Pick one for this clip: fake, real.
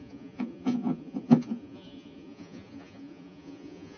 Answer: fake